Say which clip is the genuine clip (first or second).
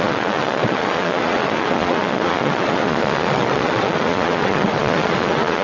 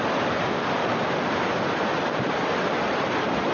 second